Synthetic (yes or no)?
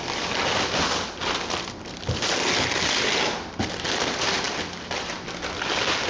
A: no